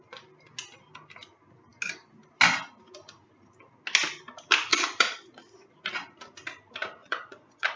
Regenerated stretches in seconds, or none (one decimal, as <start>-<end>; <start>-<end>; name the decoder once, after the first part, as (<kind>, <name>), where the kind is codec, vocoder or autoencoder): 4.7-5.7 (vocoder, Vocos); 7.0-7.8